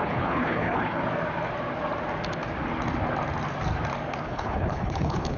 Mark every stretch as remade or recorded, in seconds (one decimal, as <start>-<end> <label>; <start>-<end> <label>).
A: 0.0-1.0 remade; 1.0-4.2 recorded; 4.2-5.4 remade